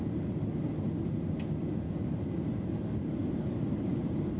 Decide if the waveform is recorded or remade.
recorded